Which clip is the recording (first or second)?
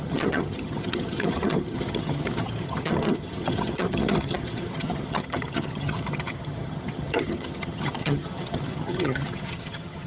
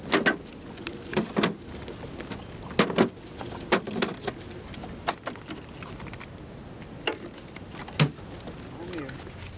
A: second